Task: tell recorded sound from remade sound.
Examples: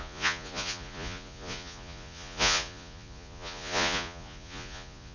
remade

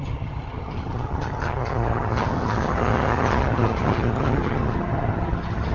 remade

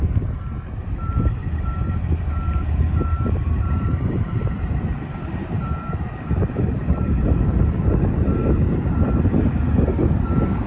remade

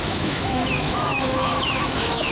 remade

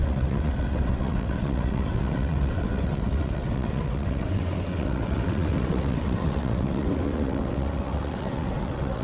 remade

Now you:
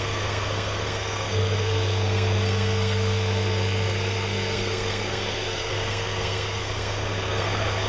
remade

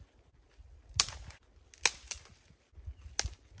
recorded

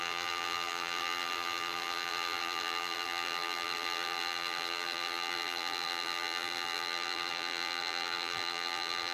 remade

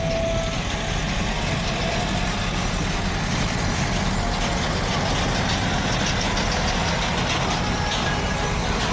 recorded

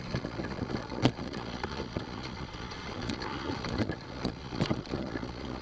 remade